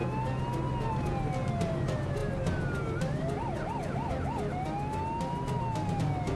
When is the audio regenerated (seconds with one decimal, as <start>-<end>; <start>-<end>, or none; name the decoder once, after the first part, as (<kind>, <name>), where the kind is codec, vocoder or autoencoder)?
none